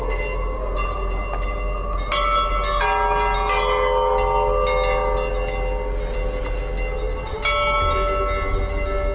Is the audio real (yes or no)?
yes